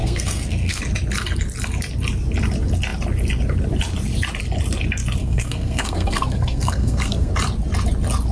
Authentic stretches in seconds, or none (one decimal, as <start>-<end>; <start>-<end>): 0.8-5.2; 7.3-8.3